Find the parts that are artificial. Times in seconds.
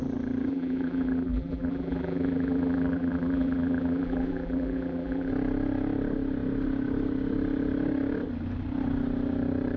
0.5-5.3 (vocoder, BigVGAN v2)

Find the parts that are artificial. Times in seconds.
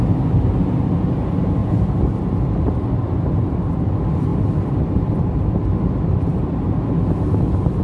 1.6-2.2 (vocoder, BigVGAN v2); 4.3-7.3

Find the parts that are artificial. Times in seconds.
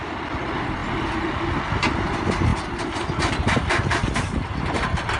0.0-5.2 (vocoder, BigVGAN v2)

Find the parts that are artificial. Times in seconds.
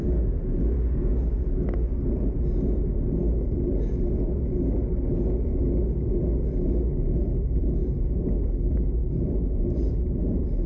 none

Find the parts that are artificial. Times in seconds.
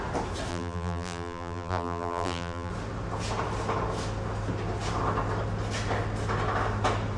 0.5-2.7 (vocoder, BigVGAN v2)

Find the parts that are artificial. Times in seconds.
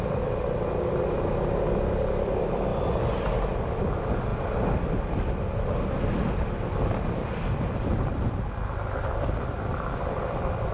7.2-8.5 (vocoder, BigVGAN v2)